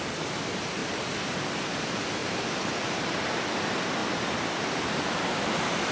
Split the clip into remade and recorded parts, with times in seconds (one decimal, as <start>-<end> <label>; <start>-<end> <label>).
0.0-2.2 recorded; 2.2-3.4 remade; 3.4-4.0 recorded; 4.0-5.5 remade; 5.5-5.9 recorded